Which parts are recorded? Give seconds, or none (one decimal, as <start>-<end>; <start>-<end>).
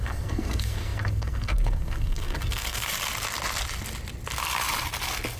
2.9-5.4